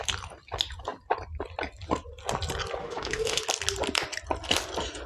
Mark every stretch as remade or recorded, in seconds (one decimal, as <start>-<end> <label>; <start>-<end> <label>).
0.0-2.8 recorded; 2.8-3.4 remade; 3.4-5.1 recorded